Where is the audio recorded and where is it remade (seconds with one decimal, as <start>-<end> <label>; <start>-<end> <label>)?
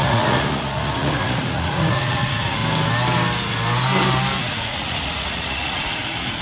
0.0-2.6 remade; 2.6-4.4 recorded; 4.4-6.4 remade